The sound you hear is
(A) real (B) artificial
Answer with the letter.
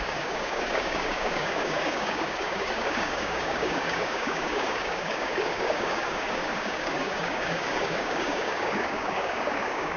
B